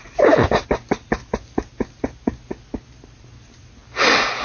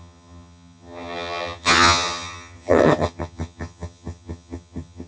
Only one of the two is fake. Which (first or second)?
second